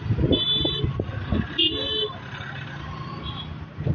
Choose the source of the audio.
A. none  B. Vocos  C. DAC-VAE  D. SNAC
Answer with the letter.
A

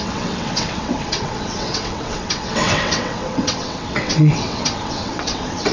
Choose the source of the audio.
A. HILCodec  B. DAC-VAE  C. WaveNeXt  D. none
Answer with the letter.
C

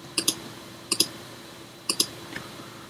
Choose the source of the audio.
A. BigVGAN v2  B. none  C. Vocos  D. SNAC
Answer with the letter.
A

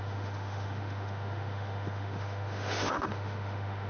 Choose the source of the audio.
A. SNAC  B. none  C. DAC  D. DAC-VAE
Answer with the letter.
D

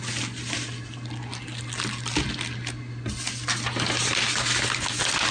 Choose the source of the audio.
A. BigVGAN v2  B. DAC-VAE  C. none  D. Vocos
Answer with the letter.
C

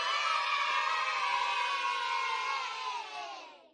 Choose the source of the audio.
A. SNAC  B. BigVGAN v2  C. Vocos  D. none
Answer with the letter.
D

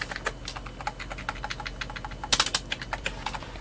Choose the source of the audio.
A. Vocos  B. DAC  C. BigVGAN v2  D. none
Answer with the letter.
D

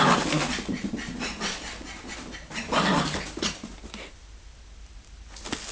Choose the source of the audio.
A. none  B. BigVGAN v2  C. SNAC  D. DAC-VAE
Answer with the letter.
A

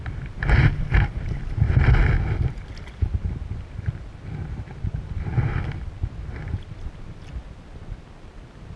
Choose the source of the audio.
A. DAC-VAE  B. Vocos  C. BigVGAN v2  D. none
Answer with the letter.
D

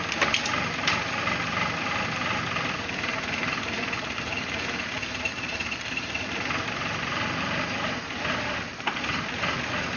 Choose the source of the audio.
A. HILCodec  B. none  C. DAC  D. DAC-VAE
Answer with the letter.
B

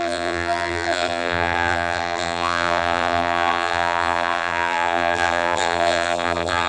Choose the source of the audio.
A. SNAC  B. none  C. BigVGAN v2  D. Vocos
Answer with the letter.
C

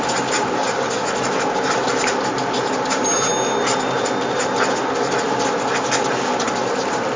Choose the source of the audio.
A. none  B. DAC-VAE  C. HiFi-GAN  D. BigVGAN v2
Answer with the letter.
A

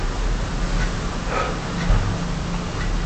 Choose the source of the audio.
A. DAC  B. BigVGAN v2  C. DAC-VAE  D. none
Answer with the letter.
D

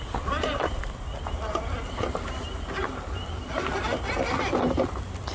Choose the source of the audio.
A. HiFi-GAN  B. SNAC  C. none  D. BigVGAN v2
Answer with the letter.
C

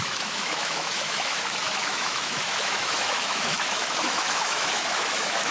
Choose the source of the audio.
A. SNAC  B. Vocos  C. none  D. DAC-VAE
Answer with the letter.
D